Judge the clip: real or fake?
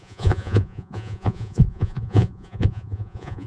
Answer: fake